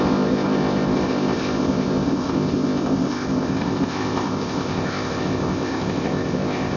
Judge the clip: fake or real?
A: fake